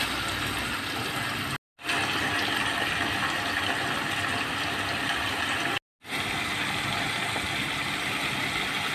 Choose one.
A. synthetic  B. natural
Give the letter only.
B